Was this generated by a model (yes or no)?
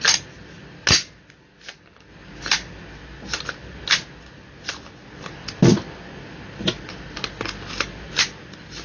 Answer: no